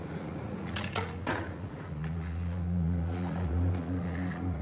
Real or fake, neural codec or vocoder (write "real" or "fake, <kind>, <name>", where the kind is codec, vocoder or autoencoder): fake, vocoder, Vocos